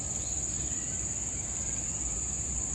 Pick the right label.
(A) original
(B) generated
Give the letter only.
A